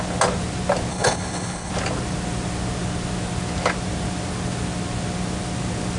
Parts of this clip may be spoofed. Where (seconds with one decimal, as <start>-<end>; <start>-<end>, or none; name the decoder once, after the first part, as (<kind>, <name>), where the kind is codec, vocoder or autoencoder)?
0.9-1.7 (codec, HILCodec)

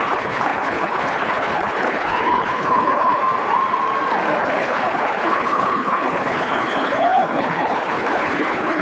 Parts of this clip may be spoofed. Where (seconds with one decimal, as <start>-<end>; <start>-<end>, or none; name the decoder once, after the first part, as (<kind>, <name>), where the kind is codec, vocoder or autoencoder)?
0.0-3.2 (codec, HILCodec); 4.4-8.8

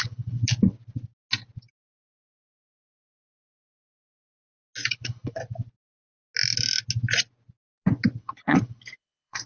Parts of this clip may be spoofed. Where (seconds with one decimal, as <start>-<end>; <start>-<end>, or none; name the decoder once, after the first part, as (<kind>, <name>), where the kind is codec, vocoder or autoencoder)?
0.0-0.4 (codec, HILCodec); 4.9-5.4; 8.2-9.5

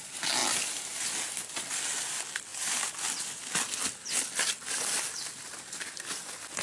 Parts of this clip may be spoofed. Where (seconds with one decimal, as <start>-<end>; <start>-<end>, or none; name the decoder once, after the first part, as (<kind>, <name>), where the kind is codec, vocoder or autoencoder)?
none

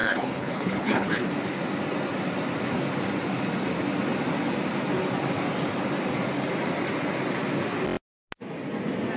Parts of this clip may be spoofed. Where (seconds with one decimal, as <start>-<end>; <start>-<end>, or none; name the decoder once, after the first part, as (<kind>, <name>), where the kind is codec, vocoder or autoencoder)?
0.0-1.3 (codec, HILCodec)